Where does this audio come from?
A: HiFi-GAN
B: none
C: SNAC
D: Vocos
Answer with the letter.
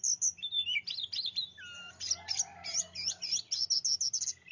B